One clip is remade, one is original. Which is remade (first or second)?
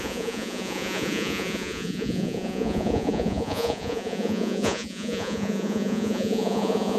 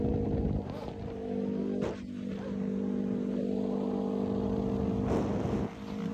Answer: first